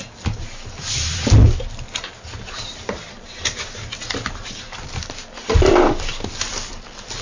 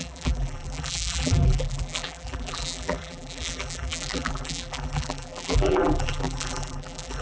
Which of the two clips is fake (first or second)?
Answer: second